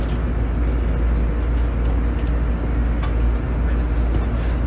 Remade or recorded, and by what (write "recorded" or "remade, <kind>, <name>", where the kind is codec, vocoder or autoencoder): recorded